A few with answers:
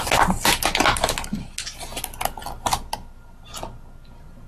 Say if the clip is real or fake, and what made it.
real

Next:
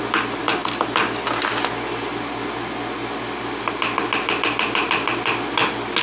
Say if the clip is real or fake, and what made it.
real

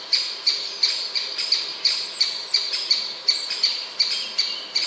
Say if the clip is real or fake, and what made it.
fake, vocoder, BigVGAN v2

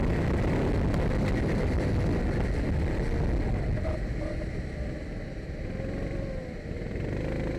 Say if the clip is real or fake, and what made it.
real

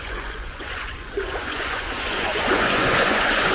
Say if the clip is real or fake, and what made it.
fake, vocoder, Vocos